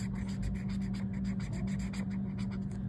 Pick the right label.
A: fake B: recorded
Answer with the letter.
B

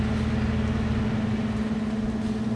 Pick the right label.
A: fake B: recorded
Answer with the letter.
B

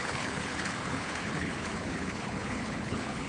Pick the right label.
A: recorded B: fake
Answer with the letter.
B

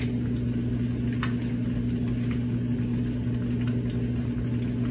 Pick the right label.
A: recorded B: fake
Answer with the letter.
A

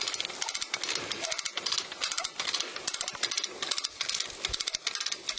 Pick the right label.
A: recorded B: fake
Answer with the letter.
A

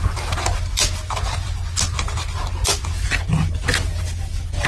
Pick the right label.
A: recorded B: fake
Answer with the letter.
A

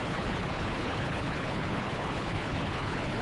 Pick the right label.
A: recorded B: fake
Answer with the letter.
B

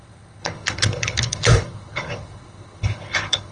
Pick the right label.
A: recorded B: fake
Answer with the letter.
B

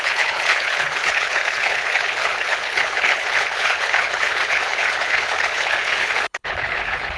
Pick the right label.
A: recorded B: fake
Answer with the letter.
B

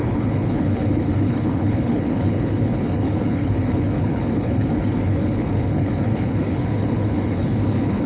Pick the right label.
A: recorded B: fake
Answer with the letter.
B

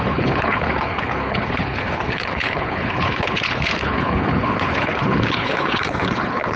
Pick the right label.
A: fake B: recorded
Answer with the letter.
A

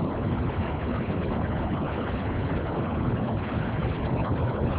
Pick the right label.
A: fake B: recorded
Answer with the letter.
A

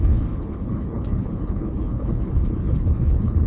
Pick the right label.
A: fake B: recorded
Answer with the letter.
A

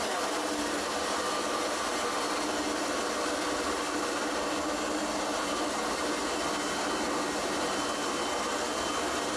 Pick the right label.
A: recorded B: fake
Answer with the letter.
A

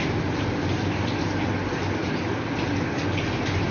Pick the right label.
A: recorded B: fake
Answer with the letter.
A